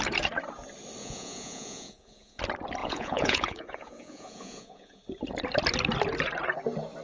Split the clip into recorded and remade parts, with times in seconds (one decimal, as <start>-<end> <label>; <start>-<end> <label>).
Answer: 0.0-1.0 recorded; 1.0-2.4 remade; 2.4-2.8 recorded; 2.8-5.0 remade; 5.0-7.0 recorded